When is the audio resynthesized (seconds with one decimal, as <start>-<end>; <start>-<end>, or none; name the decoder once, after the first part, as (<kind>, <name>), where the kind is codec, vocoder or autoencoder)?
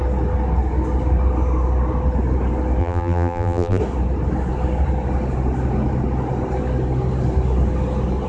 2.8-3.8 (vocoder, BigVGAN v2)